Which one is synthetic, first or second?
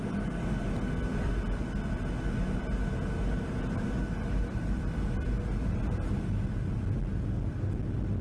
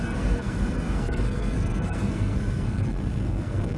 second